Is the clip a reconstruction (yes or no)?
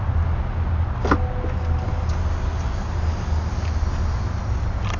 no